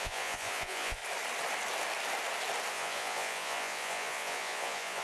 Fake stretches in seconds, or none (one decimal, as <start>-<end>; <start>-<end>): 0.0-1.0; 2.7-5.0